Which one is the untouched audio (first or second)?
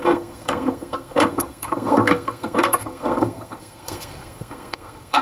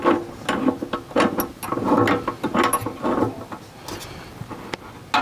second